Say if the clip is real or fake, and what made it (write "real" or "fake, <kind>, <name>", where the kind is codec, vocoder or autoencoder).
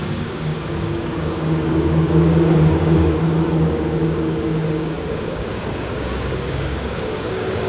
fake, codec, DAC